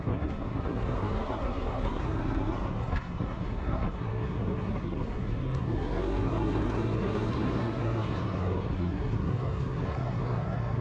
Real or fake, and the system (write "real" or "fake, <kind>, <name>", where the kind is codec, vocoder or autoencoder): fake, codec, SNAC